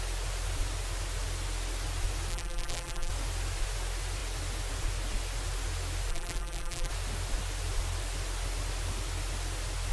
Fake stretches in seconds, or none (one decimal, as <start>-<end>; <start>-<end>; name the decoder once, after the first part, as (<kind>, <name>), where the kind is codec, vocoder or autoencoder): 2.3-3.1 (vocoder, BigVGAN v2); 6.1-6.9